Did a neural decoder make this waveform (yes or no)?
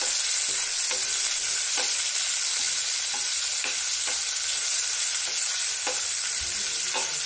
no